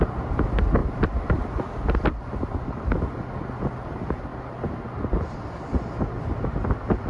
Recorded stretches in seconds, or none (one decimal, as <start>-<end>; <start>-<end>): 0.0-7.1

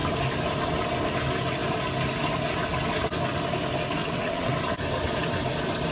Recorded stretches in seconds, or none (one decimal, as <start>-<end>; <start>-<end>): 0.0-4.0; 4.5-5.9

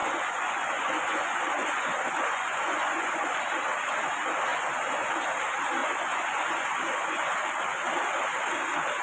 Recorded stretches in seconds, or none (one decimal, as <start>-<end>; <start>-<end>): 3.4-4.5; 5.1-5.8; 7.3-9.0